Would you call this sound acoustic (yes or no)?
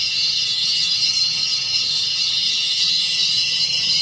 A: no